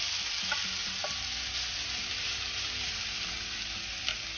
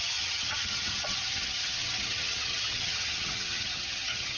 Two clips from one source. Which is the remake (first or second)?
second